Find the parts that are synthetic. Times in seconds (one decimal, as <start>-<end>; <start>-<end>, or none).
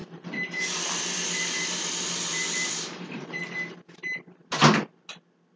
0.0-3.4